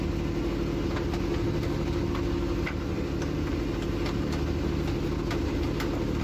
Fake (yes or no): no